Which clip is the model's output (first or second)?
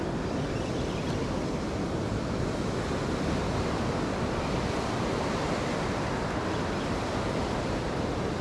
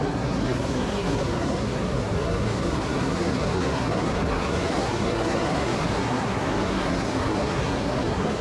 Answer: second